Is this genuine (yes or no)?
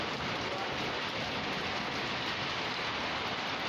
yes